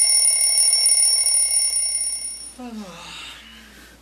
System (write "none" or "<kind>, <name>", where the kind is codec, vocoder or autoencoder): none